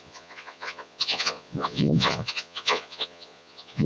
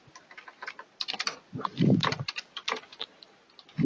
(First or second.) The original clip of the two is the second